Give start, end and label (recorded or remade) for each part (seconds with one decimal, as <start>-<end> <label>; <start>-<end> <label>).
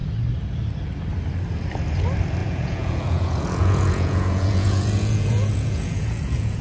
0.0-2.4 recorded; 2.4-6.6 remade